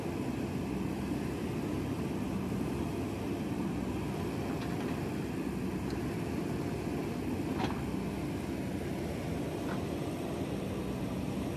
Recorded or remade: recorded